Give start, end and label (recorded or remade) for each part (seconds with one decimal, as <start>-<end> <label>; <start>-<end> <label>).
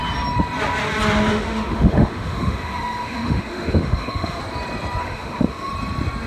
0.0-1.3 recorded; 1.3-4.4 remade; 4.4-5.0 recorded; 5.0-5.7 remade; 5.7-6.3 recorded